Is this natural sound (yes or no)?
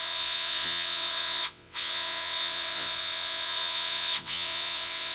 no